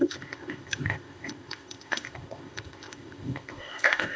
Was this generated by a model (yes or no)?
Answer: yes